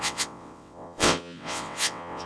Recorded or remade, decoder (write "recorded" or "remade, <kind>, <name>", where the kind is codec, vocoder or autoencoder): remade, vocoder, WaveNeXt